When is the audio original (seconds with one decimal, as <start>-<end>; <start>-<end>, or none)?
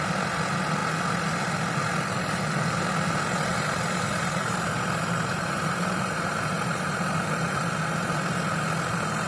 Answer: 0.0-3.5; 7.6-9.3